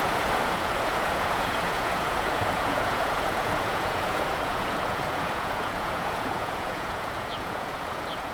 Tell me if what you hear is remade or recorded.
remade